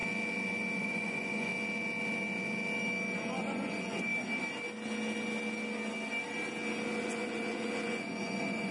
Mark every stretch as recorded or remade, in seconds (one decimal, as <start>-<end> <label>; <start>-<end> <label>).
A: 0.0-0.8 recorded; 0.8-1.5 remade; 1.5-3.3 recorded; 3.3-4.1 remade; 4.1-7.0 recorded; 7.0-8.7 remade